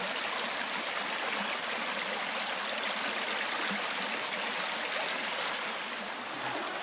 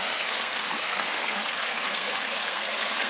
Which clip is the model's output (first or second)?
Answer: second